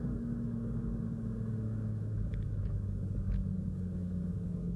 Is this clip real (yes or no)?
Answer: no